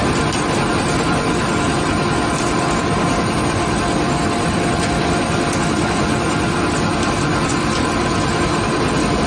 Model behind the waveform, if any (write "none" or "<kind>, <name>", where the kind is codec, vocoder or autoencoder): none